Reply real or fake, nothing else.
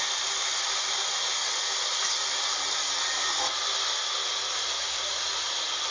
real